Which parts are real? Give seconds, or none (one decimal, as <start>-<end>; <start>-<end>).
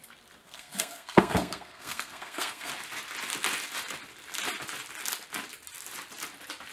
0.0-0.4; 2.7-6.7